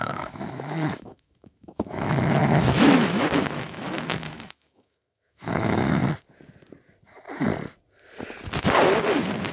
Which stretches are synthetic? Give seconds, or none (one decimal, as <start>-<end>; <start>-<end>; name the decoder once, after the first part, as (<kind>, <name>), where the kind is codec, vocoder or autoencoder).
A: 0.0-6.0 (autoencoder, DAC-VAE)